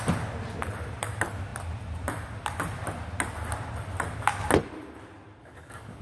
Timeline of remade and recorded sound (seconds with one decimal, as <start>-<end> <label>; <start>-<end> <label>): 0.0-5.4 recorded; 5.4-6.0 remade